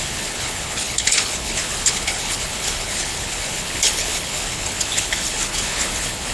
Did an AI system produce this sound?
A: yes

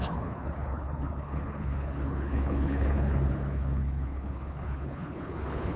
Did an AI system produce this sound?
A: yes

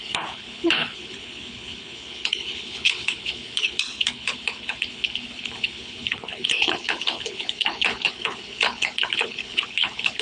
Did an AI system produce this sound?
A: yes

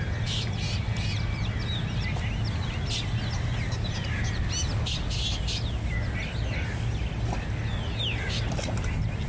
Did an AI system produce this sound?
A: no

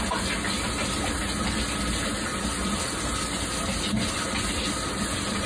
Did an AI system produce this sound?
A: no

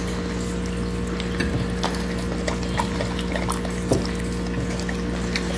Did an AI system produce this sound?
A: no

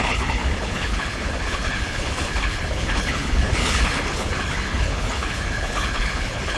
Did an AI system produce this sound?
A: yes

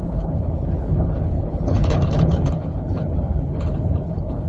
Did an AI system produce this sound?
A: yes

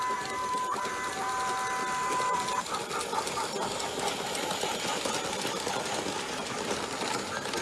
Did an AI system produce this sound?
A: no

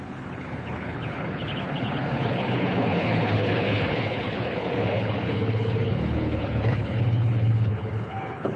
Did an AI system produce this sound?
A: yes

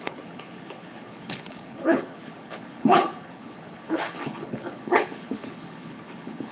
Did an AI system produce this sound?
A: yes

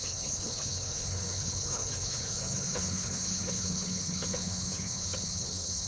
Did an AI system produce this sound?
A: yes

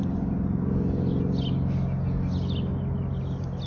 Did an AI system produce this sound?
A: no